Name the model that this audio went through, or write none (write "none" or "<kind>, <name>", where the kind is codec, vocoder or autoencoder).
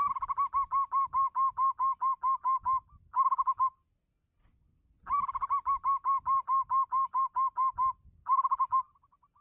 none